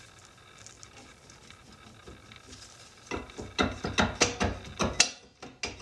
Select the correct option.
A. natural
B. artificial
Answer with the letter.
A